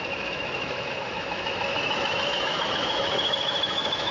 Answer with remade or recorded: remade